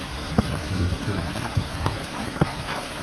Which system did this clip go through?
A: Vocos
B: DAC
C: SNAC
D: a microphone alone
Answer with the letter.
C